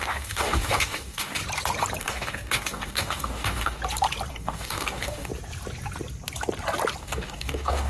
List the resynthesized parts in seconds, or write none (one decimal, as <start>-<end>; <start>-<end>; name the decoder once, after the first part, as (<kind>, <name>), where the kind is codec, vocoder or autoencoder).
0.0-1.4 (codec, DAC); 2.0-3.8; 4.3-5.3; 7.0-7.9